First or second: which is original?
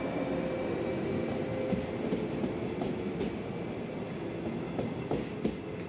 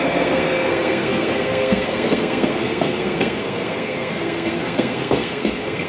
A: first